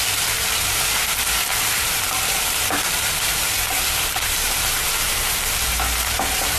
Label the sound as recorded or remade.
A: remade